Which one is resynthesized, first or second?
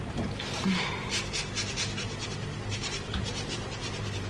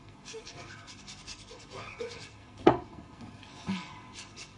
second